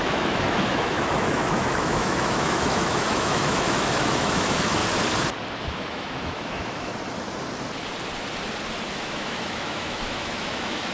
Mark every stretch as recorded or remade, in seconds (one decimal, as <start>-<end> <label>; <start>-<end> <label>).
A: 0.0-4.8 remade; 4.8-5.6 recorded; 5.6-6.9 remade; 6.9-8.9 recorded; 8.9-10.9 remade